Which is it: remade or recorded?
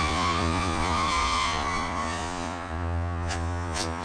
remade